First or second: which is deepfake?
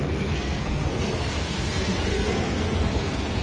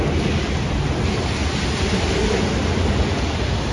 first